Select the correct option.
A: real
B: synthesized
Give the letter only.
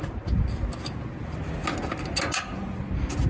A